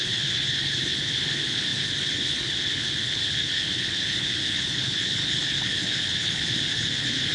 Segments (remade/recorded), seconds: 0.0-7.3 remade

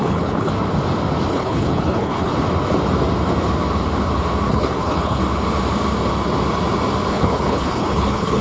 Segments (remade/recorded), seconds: 0.0-0.5 remade; 0.5-1.3 recorded; 1.3-2.3 remade; 2.3-4.5 recorded; 4.5-5.2 remade; 5.2-7.1 recorded; 7.1-8.4 remade

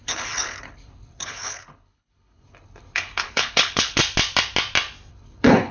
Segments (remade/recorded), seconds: 0.0-4.0 remade; 4.0-5.1 recorded; 5.1-5.7 remade

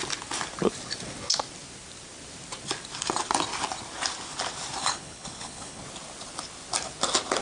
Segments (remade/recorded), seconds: 0.0-4.8 recorded; 4.8-5.8 remade; 5.8-7.4 recorded

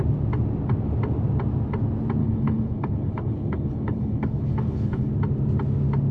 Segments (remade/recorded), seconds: 0.0-2.2 recorded; 2.2-5.1 remade; 5.1-6.1 recorded

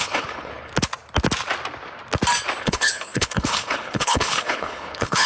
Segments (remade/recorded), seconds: 0.0-0.7 remade; 0.7-2.6 recorded; 2.6-5.3 remade

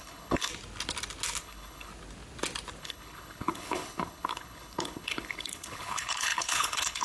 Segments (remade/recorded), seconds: 0.0-0.5 remade; 0.5-1.4 recorded; 1.4-1.9 remade; 1.9-2.8 recorded; 2.8-7.0 remade

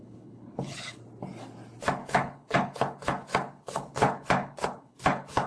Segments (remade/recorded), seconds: 0.0-1.0 remade; 1.0-2.0 recorded; 2.0-5.5 remade